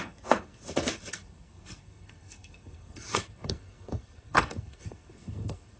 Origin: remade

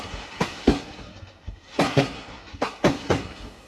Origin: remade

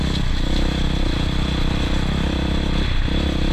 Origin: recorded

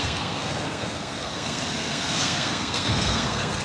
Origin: remade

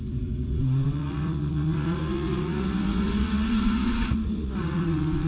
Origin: remade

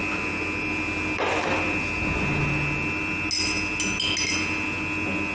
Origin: recorded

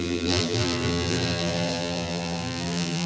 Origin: remade